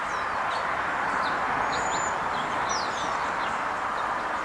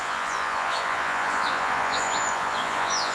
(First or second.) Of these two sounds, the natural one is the first